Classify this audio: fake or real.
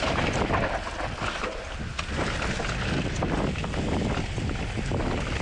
real